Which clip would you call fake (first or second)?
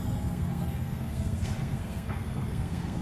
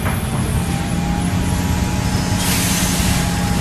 first